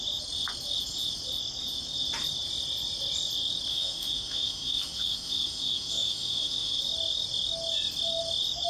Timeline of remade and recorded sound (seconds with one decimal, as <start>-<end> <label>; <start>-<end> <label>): 0.0-3.7 recorded; 3.7-6.8 remade; 6.8-8.7 recorded